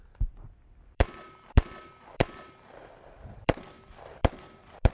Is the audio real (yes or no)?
no